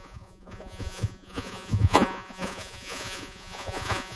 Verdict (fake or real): fake